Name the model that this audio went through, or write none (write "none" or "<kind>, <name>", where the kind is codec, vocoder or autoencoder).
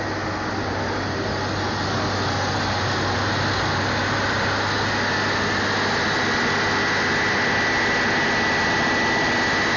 none